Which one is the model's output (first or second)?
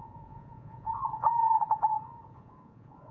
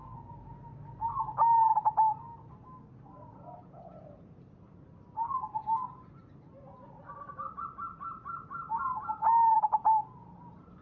first